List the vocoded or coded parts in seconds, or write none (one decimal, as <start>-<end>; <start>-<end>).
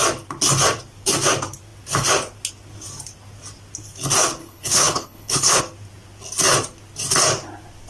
4.4-5.6